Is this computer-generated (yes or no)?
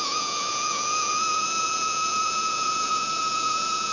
yes